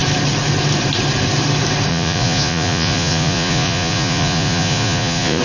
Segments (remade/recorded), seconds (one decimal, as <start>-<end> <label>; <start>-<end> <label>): 0.0-1.9 recorded; 1.9-5.4 remade